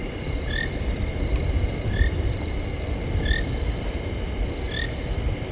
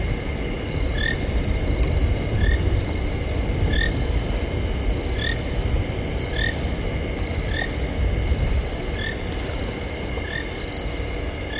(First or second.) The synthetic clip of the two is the first